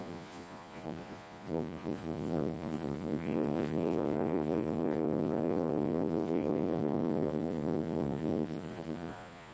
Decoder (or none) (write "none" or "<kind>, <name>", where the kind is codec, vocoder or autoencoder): vocoder, Vocos